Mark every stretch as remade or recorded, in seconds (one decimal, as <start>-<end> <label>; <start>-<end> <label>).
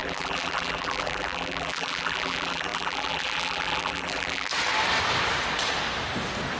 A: 0.0-4.5 remade; 4.5-6.6 recorded